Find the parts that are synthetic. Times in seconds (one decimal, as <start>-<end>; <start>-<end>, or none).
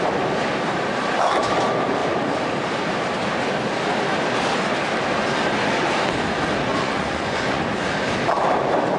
6.7-7.6